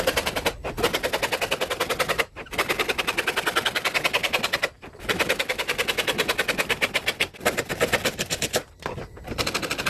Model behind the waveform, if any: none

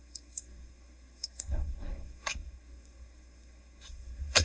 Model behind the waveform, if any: codec, SNAC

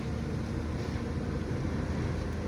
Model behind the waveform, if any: none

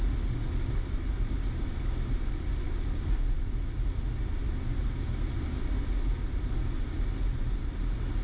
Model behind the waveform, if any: none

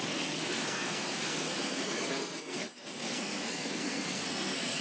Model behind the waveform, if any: codec, SNAC